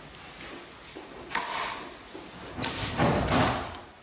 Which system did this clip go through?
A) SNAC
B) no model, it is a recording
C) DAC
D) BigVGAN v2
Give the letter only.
B